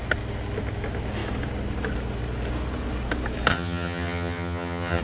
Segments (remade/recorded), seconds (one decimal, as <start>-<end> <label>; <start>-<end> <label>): 0.0-3.5 recorded; 3.5-5.0 remade